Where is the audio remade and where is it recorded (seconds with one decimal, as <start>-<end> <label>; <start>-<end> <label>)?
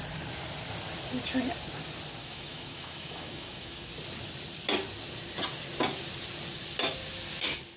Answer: 0.0-2.2 recorded; 2.2-3.9 remade; 3.9-7.8 recorded